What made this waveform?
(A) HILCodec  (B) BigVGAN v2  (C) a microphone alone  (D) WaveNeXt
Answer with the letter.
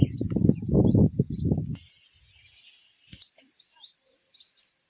C